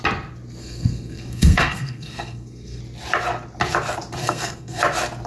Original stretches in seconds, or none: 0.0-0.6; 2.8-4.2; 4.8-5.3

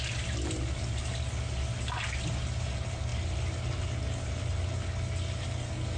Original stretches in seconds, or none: 0.0-6.0

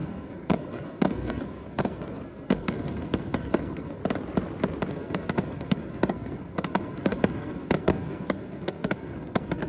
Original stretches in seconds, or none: 4.0-4.9

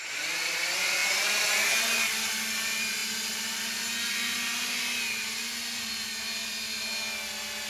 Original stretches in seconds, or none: 0.0-7.7

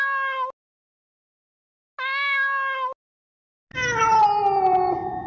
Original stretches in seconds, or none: 0.0-5.3